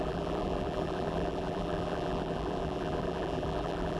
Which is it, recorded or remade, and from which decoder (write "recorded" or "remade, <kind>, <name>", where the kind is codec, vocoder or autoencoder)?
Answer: remade, vocoder, BigVGAN v2